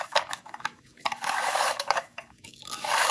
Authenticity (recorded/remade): remade